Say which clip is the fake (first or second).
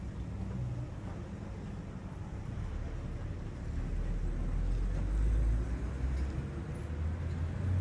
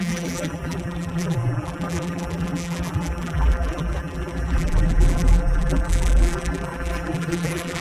second